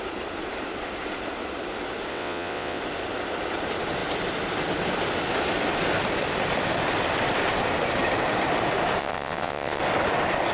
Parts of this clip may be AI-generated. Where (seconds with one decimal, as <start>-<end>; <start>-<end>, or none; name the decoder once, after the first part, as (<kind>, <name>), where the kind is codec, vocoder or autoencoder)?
2.1-2.8 (vocoder, WaveNeXt); 9.0-9.8